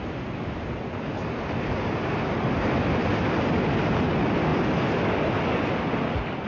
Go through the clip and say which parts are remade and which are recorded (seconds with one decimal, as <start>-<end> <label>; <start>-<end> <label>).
0.0-6.5 recorded